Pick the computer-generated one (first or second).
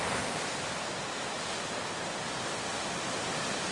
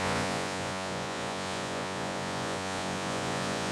second